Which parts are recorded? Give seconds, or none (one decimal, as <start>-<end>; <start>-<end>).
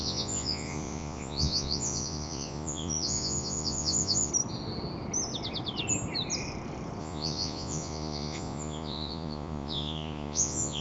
4.3-7.0